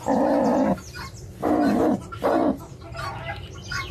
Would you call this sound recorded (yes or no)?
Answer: yes